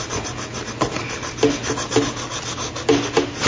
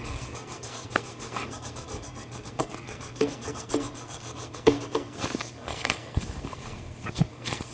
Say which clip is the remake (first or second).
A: second